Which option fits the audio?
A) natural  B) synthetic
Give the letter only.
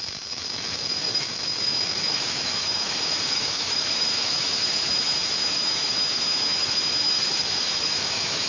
B